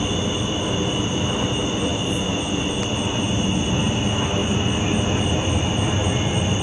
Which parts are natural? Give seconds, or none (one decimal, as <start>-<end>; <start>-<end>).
0.0-6.6